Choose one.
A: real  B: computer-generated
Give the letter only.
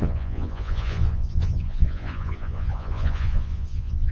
B